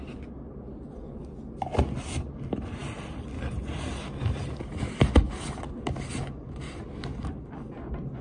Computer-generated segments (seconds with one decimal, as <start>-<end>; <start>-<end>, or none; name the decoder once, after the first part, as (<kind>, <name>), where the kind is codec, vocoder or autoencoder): none